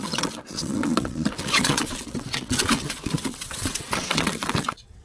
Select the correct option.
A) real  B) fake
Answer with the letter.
B